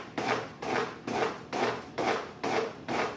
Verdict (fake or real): fake